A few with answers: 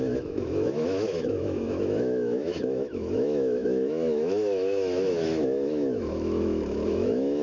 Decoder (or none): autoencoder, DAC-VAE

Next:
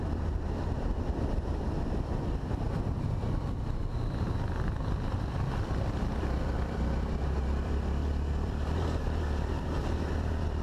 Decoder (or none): vocoder, BigVGAN v2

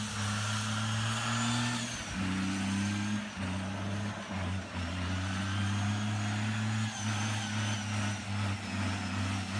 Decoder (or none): none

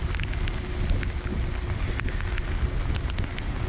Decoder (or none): none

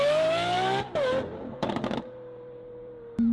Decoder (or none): vocoder, BigVGAN v2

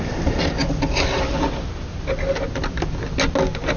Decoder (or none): none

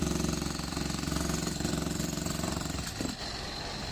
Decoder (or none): vocoder, BigVGAN v2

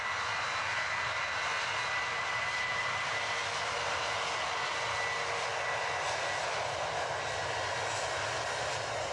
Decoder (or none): none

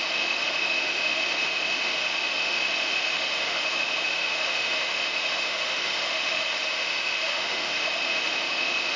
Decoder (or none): autoencoder, DAC-VAE